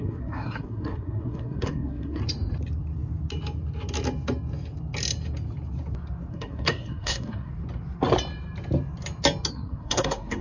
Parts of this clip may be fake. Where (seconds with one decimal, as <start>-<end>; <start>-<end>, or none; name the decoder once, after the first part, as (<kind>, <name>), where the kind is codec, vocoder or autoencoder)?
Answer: 0.0-2.2 (codec, SNAC); 6.3-7.5; 9.5-10.4